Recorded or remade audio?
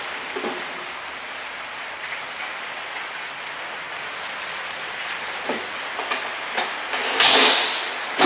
recorded